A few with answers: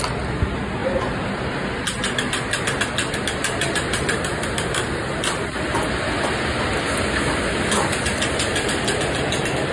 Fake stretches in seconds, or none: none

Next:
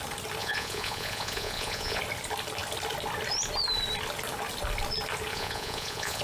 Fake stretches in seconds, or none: 0.4-2.0; 5.3-6.2

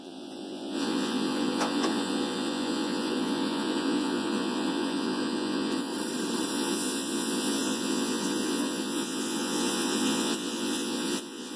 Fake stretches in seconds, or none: 0.0-5.9; 6.5-11.6

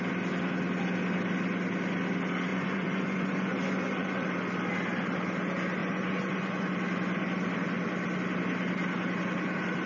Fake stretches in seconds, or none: 2.5-4.3; 5.8-6.7

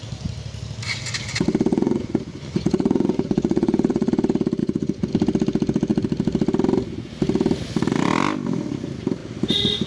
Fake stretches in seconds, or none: 1.7-4.1; 4.6-5.1

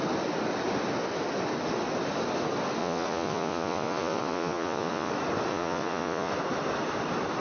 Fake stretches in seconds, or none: 2.8-5.1; 5.5-6.3